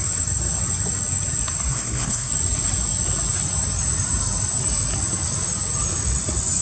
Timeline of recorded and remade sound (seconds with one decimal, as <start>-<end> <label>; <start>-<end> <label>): 0.0-1.7 recorded; 1.7-2.3 remade; 2.3-6.6 recorded